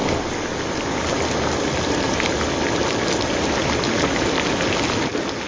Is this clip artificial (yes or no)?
no